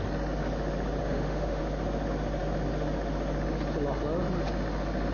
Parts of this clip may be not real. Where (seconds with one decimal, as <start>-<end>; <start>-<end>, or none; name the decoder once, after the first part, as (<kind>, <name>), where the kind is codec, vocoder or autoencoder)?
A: 1.0-1.6 (autoencoder, DAC-VAE)